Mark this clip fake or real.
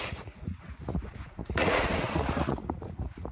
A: fake